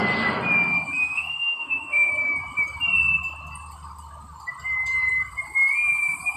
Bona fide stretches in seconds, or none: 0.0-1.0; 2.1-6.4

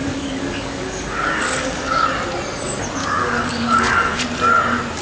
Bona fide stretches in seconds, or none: 2.0-3.0; 4.2-5.0

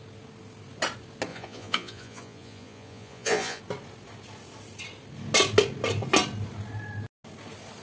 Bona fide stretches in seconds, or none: 0.0-1.3; 3.6-7.8

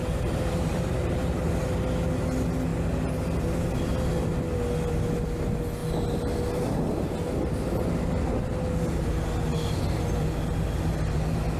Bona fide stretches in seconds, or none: 1.8-11.6

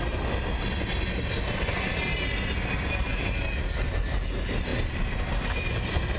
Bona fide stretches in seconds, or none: 0.0-4.7

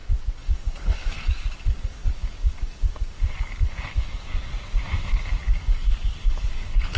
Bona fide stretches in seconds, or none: 4.5-5.4